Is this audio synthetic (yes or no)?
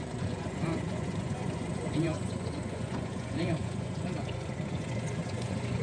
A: yes